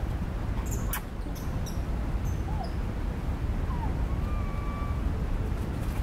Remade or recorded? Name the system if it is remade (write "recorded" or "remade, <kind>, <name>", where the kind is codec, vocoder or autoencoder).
recorded